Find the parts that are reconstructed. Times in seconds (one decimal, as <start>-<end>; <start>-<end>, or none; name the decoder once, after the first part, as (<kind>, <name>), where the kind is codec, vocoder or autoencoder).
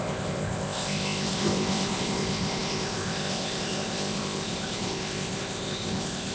0.0-6.3 (codec, ZipCodec)